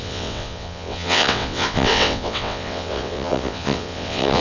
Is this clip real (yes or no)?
no